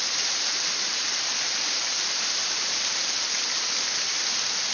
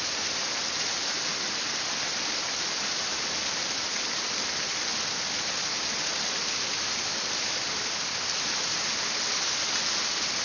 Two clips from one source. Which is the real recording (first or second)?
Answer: second